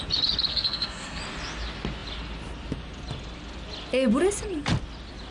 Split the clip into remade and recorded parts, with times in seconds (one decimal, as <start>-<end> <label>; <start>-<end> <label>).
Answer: 0.0-0.5 recorded; 0.5-1.2 remade; 1.2-5.3 recorded